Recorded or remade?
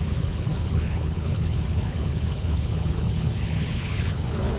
remade